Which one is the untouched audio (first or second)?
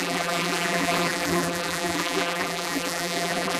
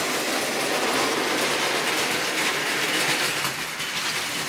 second